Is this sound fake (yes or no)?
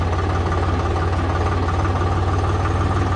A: no